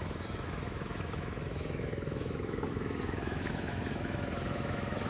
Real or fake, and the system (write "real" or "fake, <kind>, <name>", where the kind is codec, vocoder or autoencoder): fake, autoencoder, DAC-VAE